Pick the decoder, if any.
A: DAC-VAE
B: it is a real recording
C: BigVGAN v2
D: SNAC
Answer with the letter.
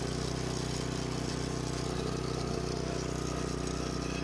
B